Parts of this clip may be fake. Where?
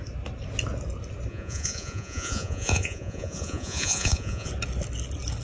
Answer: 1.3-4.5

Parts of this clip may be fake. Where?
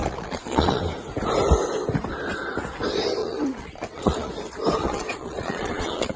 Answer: 0.0-0.8; 3.2-4.3; 4.8-6.2